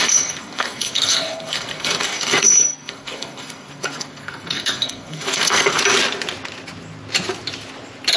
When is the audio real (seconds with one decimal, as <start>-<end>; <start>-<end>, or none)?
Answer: 5.8-8.2